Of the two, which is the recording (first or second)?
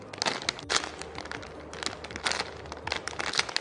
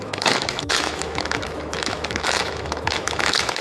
first